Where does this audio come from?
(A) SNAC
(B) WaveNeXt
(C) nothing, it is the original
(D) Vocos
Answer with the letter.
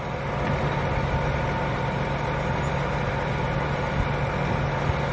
C